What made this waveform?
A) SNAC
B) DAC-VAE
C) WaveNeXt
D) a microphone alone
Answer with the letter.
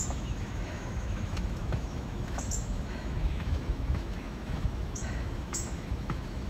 B